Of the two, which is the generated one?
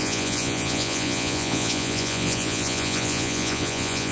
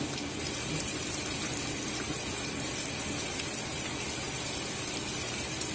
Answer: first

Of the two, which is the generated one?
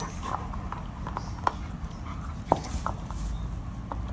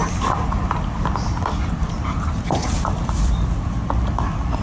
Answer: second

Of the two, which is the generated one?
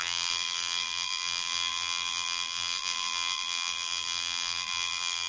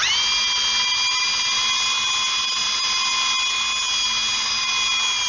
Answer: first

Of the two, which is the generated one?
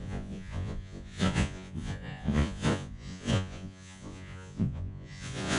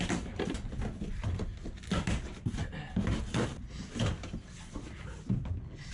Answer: first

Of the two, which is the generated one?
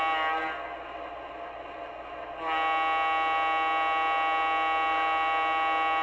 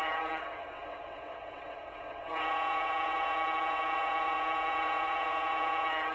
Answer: second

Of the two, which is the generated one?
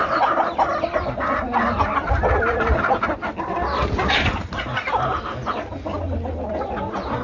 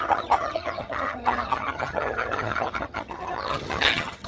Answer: second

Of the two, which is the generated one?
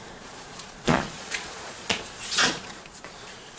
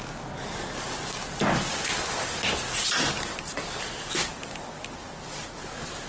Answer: first